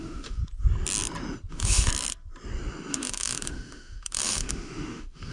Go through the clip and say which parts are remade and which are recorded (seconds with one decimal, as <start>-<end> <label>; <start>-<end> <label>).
0.0-0.4 remade; 0.4-1.5 recorded; 1.5-1.9 remade; 1.9-2.9 recorded; 2.9-5.3 remade